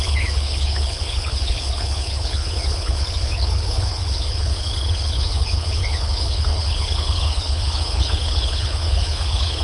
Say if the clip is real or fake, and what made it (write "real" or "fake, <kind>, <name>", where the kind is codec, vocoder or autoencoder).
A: fake, codec, HILCodec